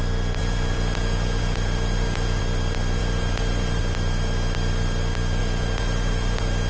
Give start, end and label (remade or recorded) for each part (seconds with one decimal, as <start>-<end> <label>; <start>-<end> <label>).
0.0-0.4 recorded; 0.4-2.4 remade; 2.4-3.0 recorded; 3.0-3.8 remade; 3.8-5.4 recorded; 5.4-6.7 remade